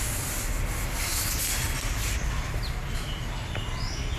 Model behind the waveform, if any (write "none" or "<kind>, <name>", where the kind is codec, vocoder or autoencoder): none